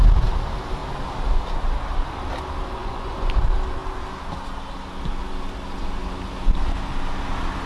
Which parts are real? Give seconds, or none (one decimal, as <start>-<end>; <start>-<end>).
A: 0.0-2.8; 3.3-7.7